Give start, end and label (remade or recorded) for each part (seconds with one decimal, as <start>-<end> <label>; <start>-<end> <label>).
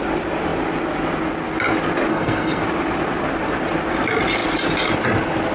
0.0-2.1 recorded; 2.1-2.6 remade; 2.6-5.5 recorded